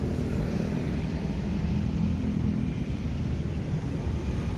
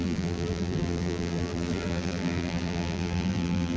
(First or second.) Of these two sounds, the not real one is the second